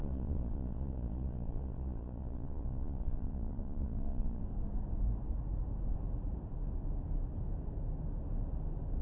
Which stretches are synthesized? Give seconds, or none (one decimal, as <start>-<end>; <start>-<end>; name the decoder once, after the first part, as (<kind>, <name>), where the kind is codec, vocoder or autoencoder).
0.0-4.4 (vocoder, Vocos)